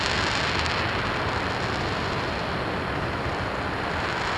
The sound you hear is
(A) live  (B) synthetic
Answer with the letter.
A